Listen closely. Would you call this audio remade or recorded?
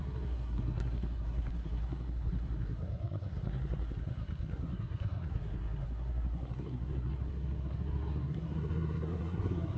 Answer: remade